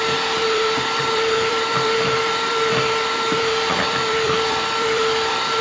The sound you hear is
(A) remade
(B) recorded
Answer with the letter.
A